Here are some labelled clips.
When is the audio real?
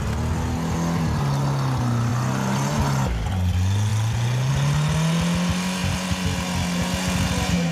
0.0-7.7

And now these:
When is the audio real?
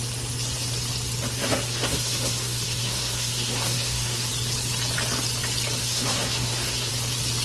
0.0-1.4; 4.3-5.8; 6.9-7.4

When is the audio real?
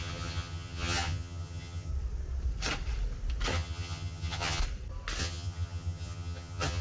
1.9-3.5; 4.6-5.2